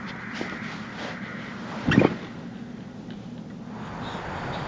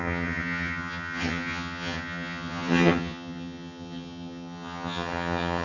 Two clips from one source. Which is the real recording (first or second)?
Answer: first